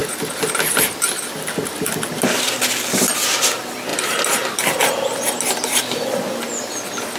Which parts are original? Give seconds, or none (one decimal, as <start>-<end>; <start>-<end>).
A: 0.0-3.9; 4.8-7.2